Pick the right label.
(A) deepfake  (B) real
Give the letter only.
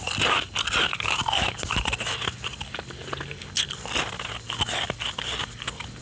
B